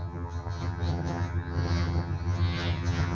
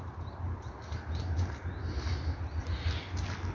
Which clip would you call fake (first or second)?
first